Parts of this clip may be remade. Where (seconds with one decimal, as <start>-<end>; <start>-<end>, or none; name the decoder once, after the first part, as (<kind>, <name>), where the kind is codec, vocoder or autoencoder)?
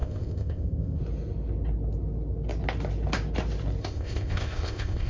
0.0-1.0 (codec, ZipCodec); 3.8-5.1